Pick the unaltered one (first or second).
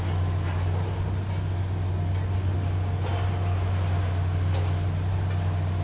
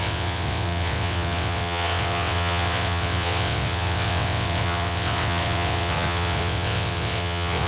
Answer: first